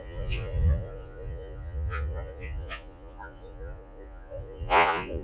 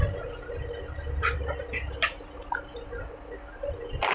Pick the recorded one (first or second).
second